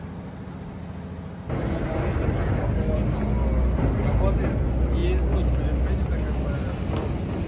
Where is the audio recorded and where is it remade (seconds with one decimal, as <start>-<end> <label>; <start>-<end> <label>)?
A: 0.0-7.5 recorded